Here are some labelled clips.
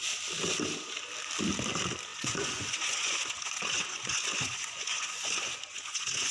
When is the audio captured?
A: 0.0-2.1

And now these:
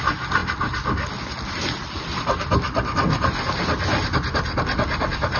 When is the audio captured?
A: 0.0-5.4

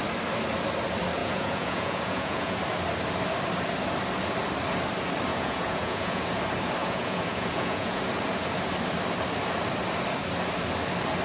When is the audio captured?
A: 0.0-1.2; 2.6-5.3; 6.2-6.8; 8.0-11.2

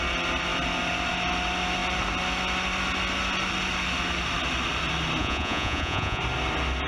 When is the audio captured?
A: 0.0-5.2; 6.2-6.9

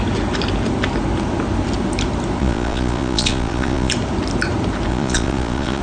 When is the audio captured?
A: 0.0-2.4; 3.9-4.9

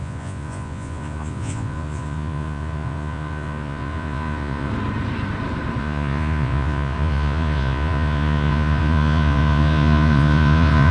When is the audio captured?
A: 4.7-5.8